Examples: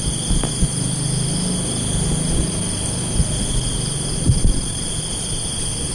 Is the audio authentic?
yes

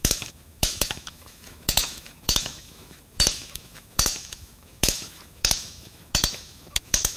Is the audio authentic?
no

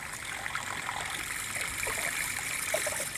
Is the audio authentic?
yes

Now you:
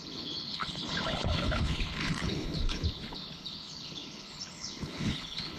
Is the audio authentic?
no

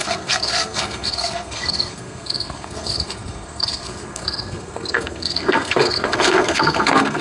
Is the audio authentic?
no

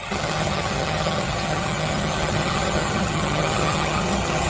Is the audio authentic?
no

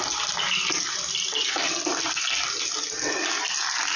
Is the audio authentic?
yes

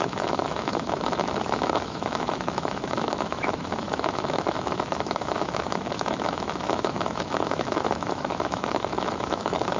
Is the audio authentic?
no